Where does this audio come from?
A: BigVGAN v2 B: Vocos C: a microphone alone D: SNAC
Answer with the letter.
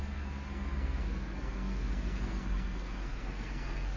D